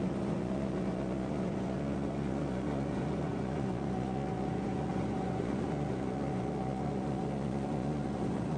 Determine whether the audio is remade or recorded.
remade